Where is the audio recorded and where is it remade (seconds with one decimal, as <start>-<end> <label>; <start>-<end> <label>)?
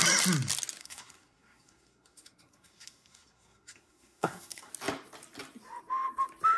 0.0-0.8 recorded; 0.8-4.7 remade; 4.7-6.6 recorded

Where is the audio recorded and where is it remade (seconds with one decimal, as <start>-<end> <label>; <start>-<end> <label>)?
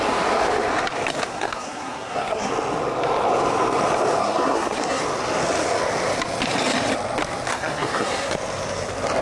0.0-1.3 recorded; 1.3-2.5 remade; 2.5-4.2 recorded; 4.2-5.0 remade; 5.0-7.5 recorded; 7.5-8.3 remade; 8.3-9.2 recorded